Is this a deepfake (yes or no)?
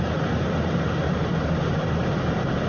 no